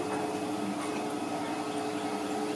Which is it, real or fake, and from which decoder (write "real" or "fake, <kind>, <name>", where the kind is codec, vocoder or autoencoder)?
real